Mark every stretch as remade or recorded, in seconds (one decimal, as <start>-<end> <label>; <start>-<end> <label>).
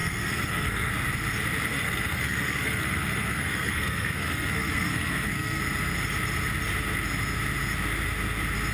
0.0-0.9 remade; 0.9-1.7 recorded; 1.7-5.6 remade; 5.6-8.7 recorded